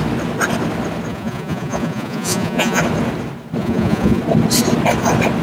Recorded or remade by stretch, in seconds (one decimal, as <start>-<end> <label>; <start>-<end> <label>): 0.0-1.1 recorded; 1.1-2.8 remade; 2.8-3.6 recorded; 3.6-4.2 remade; 4.2-5.4 recorded